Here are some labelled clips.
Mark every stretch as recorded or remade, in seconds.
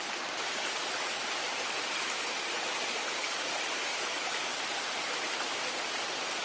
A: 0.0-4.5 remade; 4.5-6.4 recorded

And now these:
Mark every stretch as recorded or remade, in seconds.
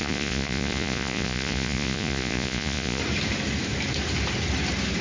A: 0.0-3.0 remade; 3.0-5.0 recorded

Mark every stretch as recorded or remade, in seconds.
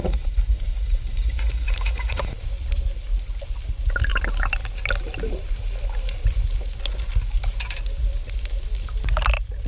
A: 0.0-2.4 remade; 2.4-9.7 recorded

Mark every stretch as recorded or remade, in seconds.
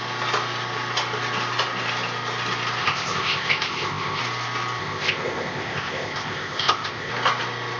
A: 0.0-2.8 recorded; 2.8-4.2 remade; 4.2-4.8 recorded; 4.8-7.1 remade; 7.1-7.8 recorded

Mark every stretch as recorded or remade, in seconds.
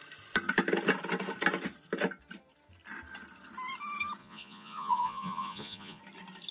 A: 0.0-4.2 recorded; 4.2-6.0 remade; 6.0-6.5 recorded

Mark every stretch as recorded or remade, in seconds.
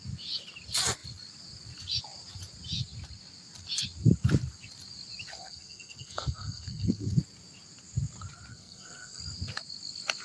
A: 0.0-5.3 recorded; 5.3-7.2 remade; 7.2-8.5 recorded; 8.5-9.2 remade; 9.2-10.2 recorded